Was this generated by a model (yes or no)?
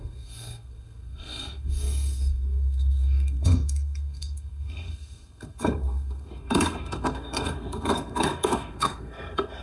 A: yes